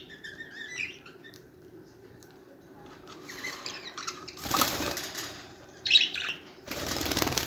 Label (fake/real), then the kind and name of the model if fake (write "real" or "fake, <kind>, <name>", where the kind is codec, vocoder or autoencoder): fake, vocoder, BigVGAN v2